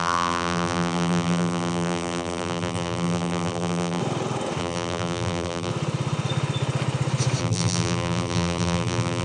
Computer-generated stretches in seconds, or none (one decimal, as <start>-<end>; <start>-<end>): 0.0-4.0; 4.6-5.7; 7.4-9.2